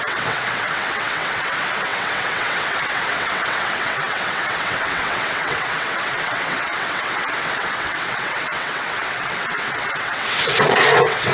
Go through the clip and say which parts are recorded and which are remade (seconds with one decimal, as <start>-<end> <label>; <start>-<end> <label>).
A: 0.0-11.3 remade